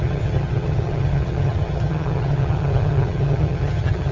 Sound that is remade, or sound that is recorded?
remade